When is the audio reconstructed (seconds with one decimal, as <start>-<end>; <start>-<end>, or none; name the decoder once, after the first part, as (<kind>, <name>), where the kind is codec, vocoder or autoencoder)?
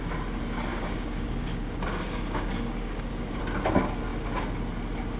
0.7-3.4 (codec, DAC)